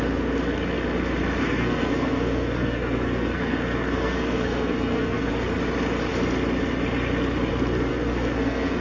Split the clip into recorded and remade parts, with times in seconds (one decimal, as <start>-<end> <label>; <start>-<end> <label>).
0.0-1.4 recorded; 1.4-5.3 remade; 5.3-7.9 recorded; 7.9-8.8 remade